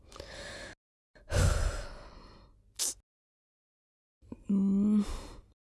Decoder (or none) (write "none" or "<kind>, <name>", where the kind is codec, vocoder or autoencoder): none